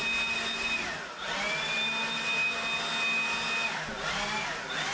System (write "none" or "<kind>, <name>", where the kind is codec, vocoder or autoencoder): none